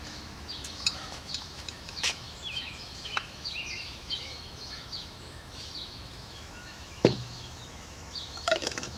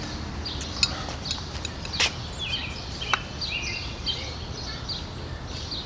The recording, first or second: second